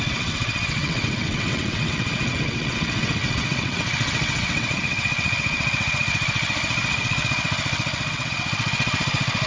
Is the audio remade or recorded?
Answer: remade